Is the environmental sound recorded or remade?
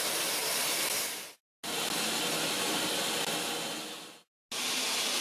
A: recorded